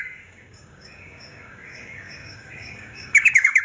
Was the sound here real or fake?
fake